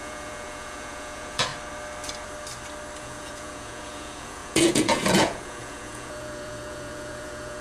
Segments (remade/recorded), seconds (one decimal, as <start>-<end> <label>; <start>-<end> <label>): 0.0-1.5 remade; 1.5-3.0 recorded; 3.0-7.6 remade